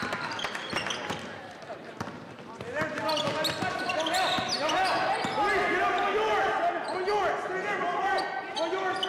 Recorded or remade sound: recorded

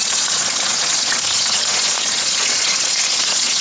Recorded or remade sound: remade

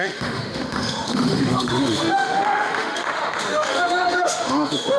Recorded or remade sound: remade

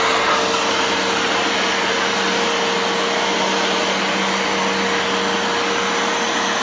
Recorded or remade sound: recorded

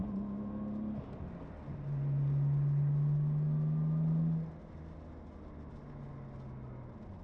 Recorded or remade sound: recorded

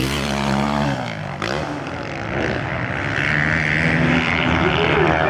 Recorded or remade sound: recorded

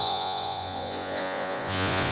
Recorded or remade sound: remade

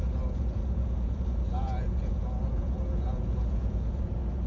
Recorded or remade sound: remade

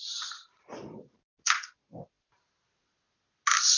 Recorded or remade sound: recorded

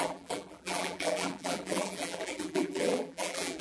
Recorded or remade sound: remade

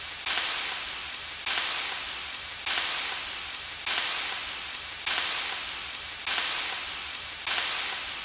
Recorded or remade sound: recorded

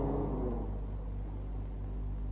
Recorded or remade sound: recorded